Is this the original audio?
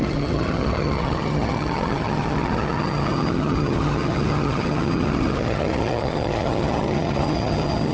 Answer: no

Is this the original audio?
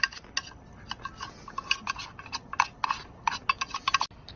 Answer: yes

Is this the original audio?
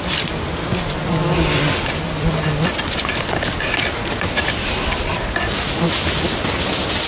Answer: yes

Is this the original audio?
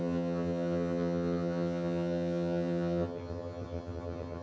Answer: no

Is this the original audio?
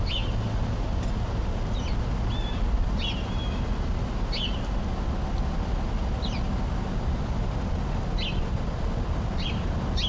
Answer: yes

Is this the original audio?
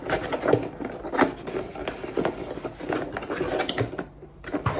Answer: yes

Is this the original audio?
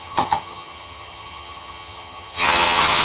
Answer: no